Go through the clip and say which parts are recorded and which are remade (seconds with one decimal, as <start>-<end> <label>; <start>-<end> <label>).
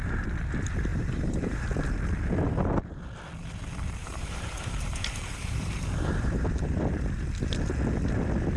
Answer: 0.0-0.9 recorded; 0.9-1.6 remade; 1.6-4.0 recorded; 4.0-6.7 remade; 6.7-8.6 recorded